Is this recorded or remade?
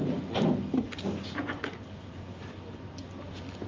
recorded